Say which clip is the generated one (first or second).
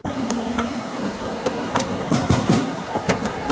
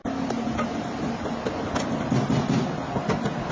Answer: first